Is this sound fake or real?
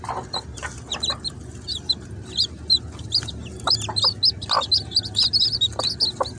real